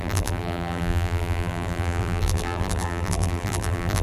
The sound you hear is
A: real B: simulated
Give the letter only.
B